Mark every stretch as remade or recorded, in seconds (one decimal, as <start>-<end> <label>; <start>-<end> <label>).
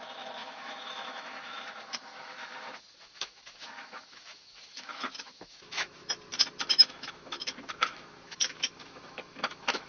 0.0-6.0 remade; 6.0-6.7 recorded; 6.7-9.9 remade